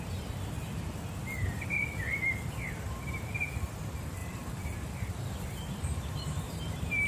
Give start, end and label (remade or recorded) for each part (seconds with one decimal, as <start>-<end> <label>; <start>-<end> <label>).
0.0-4.2 recorded; 4.2-7.1 remade